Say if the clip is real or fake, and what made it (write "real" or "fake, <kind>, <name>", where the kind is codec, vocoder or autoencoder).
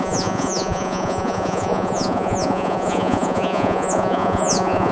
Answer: fake, vocoder, Vocos